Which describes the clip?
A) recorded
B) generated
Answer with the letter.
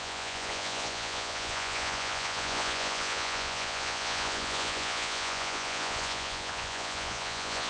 B